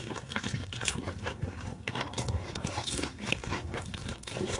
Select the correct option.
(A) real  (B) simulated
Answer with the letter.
B